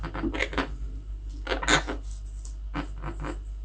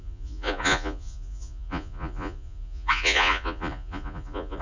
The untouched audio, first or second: first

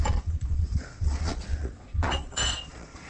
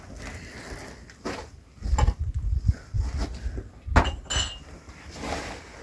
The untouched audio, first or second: second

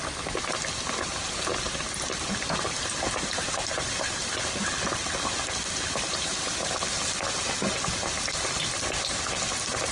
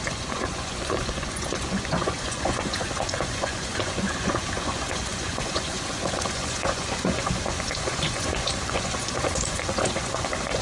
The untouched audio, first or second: first